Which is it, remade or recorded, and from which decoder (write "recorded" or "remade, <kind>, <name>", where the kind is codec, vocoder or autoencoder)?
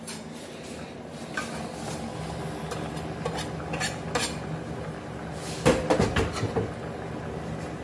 recorded